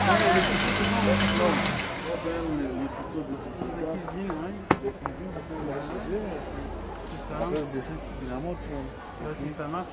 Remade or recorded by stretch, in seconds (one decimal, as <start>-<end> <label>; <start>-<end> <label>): 0.0-4.6 recorded; 4.6-5.5 remade; 5.5-9.9 recorded